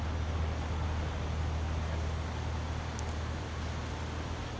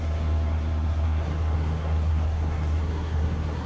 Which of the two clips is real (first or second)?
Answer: first